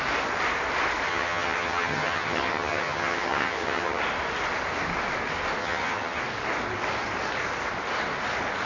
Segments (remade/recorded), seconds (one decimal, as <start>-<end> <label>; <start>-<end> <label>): 0.0-1.1 recorded; 1.1-4.0 remade; 4.0-5.6 recorded; 5.6-6.2 remade; 6.2-8.7 recorded